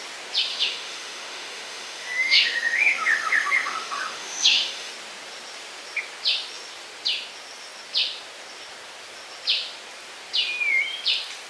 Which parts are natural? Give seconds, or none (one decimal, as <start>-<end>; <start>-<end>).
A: 0.0-0.5; 4.9-11.5